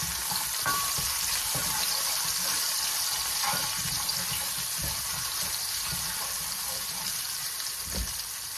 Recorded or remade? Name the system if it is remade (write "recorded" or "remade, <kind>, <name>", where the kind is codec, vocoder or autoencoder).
remade, vocoder, BigVGAN v2